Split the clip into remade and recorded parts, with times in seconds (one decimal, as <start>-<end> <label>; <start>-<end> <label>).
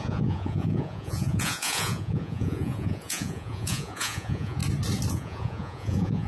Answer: 0.0-4.6 remade; 4.6-5.1 recorded; 5.1-6.3 remade